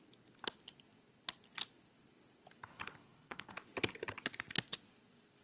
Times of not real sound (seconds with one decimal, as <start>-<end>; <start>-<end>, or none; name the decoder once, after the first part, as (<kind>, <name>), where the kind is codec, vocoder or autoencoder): 2.7-3.5 (codec, HILCodec)